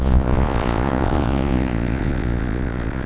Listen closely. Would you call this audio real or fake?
fake